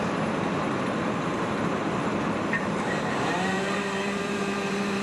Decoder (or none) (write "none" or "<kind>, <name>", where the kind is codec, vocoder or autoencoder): vocoder, BigVGAN v2